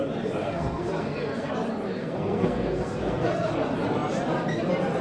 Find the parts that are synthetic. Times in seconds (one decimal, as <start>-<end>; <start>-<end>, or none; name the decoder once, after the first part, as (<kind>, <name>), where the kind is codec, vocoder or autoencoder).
0.4-1.5 (codec, SNAC); 2.0-3.5